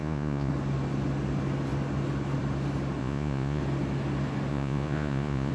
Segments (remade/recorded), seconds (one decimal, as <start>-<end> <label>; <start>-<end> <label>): 0.0-0.5 remade; 0.5-3.0 recorded; 3.0-3.6 remade; 3.6-4.5 recorded; 4.5-5.5 remade